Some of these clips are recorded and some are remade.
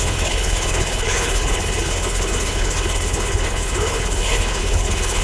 remade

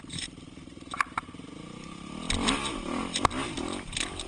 recorded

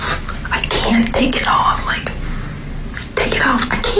recorded